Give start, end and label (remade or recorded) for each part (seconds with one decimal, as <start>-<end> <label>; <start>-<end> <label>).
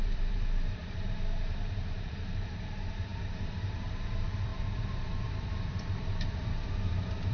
0.0-7.3 remade